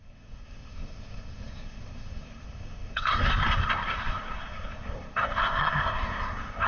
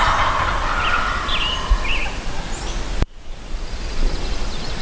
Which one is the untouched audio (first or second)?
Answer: second